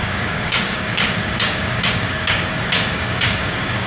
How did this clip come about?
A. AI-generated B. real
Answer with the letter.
A